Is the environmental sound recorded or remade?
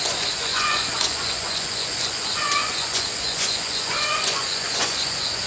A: remade